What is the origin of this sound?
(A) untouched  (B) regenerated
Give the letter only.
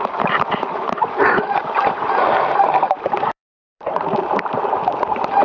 B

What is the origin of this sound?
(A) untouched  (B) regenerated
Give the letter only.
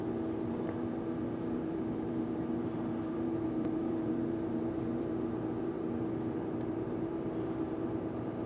B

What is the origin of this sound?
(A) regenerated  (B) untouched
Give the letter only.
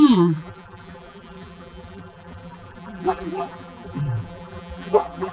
A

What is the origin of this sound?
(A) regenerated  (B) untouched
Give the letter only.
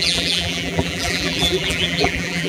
A